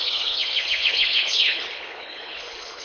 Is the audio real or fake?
fake